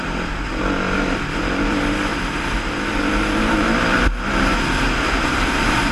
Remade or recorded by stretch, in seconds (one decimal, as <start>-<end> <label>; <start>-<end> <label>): 0.0-5.9 recorded